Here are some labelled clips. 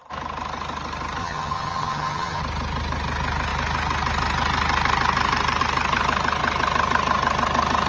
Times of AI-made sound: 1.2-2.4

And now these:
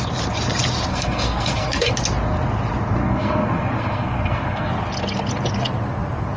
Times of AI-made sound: 0.9-1.9; 3.0-4.7

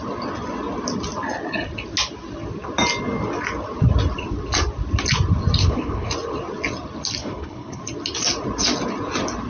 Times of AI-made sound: 5.6-6.1; 7.2-7.8

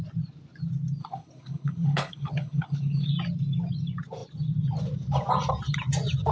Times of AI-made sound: 1.0-3.1

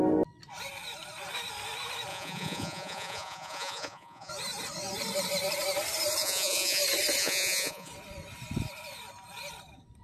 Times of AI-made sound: 2.1-4.3; 6.2-6.8; 7.2-7.9

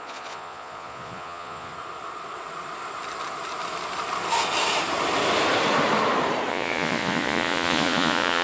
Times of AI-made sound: 0.0-1.7; 6.5-8.4

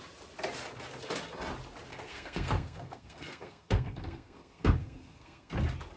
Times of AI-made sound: 1.9-5.5